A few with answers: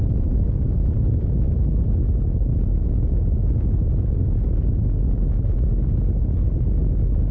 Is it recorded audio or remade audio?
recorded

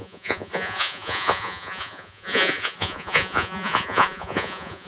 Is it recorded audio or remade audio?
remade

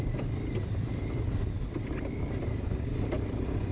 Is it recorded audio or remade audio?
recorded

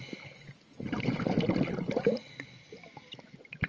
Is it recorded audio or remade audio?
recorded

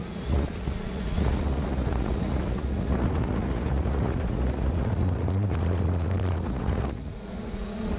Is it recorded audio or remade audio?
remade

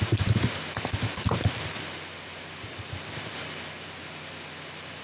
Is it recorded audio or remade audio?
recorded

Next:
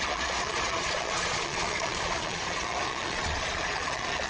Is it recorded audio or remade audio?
remade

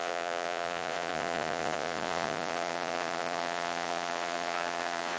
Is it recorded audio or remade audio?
remade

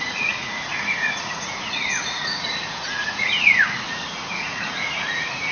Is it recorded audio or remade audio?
remade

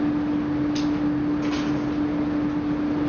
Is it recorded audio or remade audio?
recorded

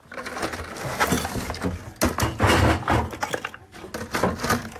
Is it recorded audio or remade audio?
recorded